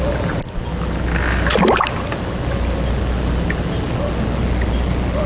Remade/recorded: recorded